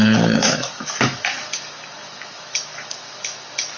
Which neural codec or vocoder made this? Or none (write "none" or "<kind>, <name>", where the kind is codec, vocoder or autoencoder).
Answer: autoencoder, DAC-VAE